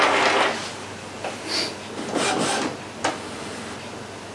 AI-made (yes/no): no